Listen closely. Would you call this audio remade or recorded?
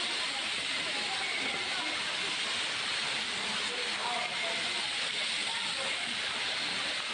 recorded